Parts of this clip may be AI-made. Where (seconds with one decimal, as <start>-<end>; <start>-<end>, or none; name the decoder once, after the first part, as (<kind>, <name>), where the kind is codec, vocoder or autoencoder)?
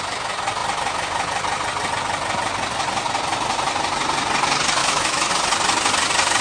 4.8-5.3 (autoencoder, DAC-VAE)